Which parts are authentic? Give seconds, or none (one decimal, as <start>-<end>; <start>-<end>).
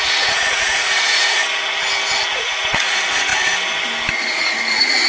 1.4-2.3; 3.3-4.1